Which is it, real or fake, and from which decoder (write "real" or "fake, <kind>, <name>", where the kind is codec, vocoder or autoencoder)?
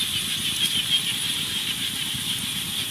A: real